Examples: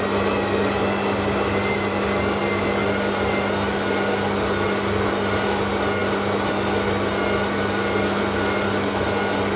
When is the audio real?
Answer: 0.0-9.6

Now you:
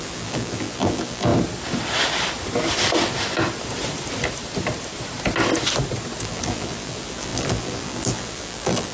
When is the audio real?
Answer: 1.3-6.2

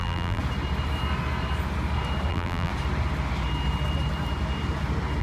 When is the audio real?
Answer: 0.4-2.3; 2.7-5.2